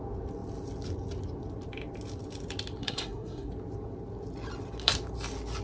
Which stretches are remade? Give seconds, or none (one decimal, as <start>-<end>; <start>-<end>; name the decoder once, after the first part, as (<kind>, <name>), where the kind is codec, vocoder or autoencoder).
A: 2.8-3.5 (codec, SNAC)